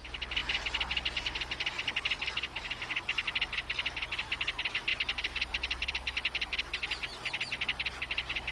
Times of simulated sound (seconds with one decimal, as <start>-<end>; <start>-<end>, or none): 4.9-5.9